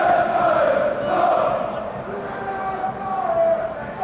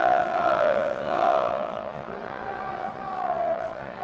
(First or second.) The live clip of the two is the first